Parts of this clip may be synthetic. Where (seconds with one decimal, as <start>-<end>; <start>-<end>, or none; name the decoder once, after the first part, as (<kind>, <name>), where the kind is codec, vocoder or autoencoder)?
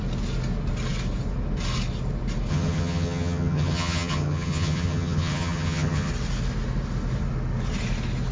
2.5-6.1 (vocoder, HiFi-GAN)